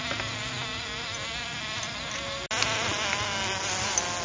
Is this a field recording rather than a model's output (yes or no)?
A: yes